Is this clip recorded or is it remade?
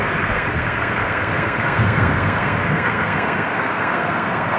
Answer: remade